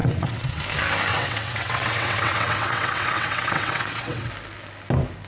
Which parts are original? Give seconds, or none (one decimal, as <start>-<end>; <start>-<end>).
0.6-1.1; 4.3-5.3